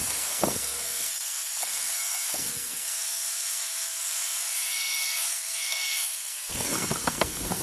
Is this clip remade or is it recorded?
remade